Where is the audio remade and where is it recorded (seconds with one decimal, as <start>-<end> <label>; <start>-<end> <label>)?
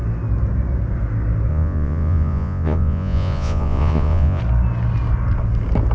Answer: 0.0-1.5 recorded; 1.5-4.4 remade; 4.4-5.9 recorded